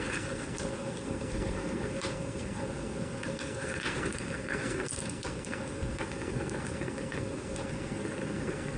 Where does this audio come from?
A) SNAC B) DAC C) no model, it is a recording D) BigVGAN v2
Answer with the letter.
A